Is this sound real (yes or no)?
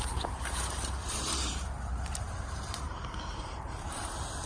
no